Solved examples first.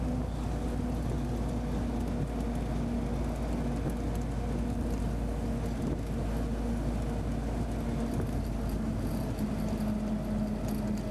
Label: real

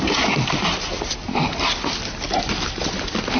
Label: real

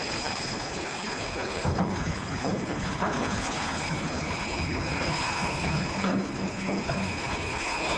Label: fake